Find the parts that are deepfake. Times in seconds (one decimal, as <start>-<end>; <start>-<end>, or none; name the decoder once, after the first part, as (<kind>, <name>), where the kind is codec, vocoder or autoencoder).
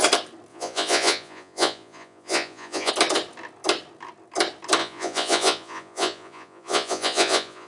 0.5-2.9 (vocoder, Vocos); 4.8-7.7